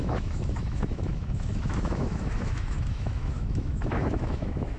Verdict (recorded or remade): remade